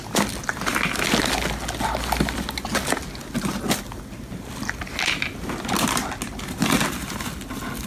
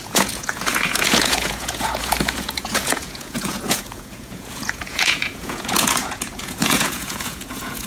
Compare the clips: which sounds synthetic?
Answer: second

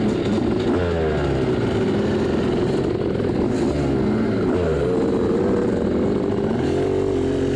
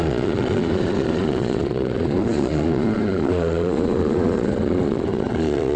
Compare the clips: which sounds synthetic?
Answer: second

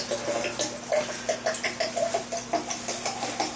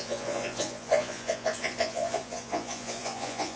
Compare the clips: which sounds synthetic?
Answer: second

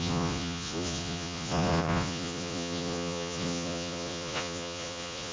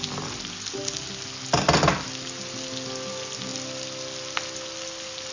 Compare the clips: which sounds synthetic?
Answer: first